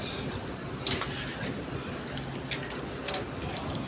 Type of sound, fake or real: real